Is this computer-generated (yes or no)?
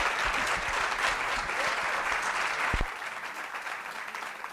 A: no